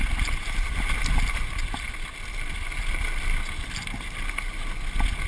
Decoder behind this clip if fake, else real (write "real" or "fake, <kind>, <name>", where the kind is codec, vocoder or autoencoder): real